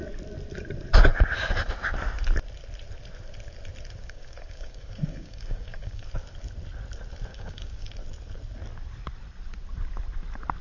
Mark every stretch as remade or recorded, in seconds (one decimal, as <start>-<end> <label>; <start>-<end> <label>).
0.0-4.0 recorded; 4.0-6.1 remade; 6.1-7.3 recorded; 7.3-7.9 remade; 7.9-10.6 recorded